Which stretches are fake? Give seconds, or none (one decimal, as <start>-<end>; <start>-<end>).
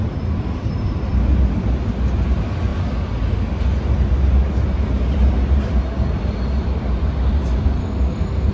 7.8-8.5